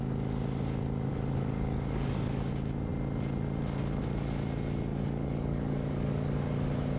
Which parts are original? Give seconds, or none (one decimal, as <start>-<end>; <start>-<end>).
0.0-1.1; 2.5-4.9; 6.5-7.0